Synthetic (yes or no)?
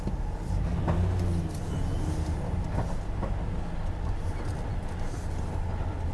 no